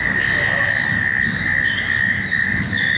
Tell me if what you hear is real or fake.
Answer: real